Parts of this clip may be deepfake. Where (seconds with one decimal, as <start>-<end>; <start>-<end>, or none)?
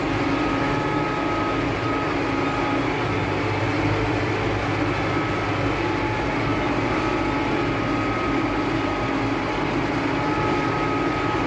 none